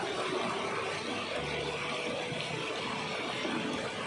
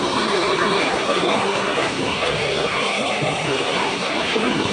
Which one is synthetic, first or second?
second